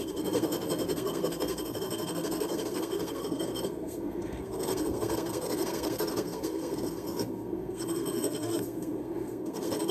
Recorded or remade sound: remade